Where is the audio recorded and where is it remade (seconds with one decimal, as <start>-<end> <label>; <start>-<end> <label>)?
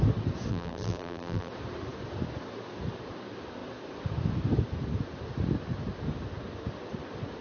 0.0-0.5 recorded; 0.5-1.5 remade; 1.5-7.4 recorded